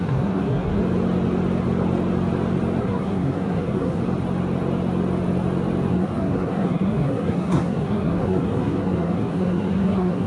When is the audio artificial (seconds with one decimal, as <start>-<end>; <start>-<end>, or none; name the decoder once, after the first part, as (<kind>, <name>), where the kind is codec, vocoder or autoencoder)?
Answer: 0.0-0.8 (codec, SNAC); 2.8-4.0; 5.9-10.3